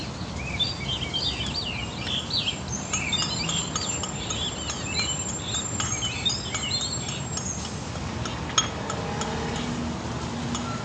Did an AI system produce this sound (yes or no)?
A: no